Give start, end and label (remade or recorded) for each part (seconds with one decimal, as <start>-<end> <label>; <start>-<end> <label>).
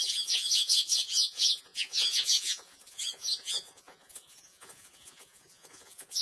0.0-6.2 remade